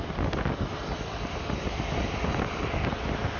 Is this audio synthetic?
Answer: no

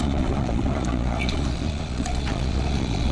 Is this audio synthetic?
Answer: yes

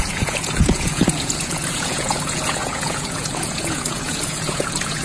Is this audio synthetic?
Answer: yes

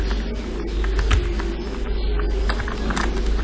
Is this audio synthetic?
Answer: no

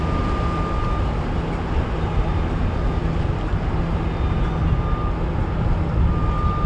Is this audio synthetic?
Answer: no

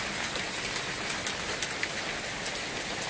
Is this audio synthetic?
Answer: no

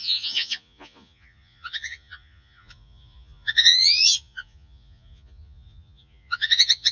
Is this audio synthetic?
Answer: yes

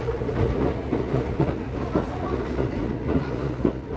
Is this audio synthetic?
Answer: yes